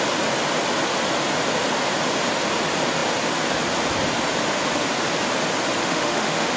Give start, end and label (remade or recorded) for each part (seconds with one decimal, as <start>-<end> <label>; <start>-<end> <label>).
0.0-5.8 recorded; 5.8-6.6 remade